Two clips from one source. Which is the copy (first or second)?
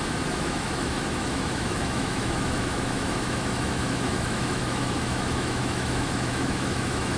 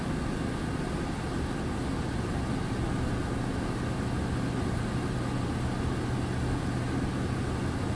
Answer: first